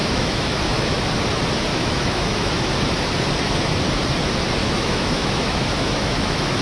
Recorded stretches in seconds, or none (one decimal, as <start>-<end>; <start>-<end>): 1.1-1.7; 2.5-4.6